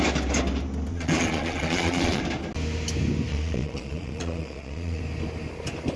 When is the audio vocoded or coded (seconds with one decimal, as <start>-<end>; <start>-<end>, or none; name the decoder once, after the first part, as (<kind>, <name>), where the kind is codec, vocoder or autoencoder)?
0.9-2.2 (vocoder, Vocos); 3.3-5.0